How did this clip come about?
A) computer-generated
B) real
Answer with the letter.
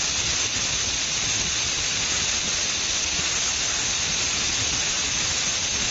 B